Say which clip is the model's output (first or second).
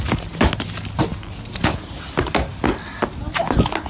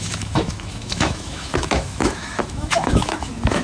second